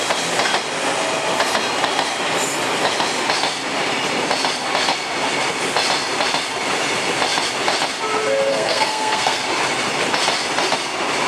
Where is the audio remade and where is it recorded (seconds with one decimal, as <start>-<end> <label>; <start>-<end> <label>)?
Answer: 0.0-8.5 recorded; 8.5-9.4 remade; 9.4-11.3 recorded